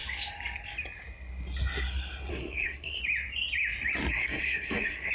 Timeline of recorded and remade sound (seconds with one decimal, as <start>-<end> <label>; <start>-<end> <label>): 0.0-2.3 recorded; 2.3-3.0 remade; 3.0-4.1 recorded; 4.1-5.1 remade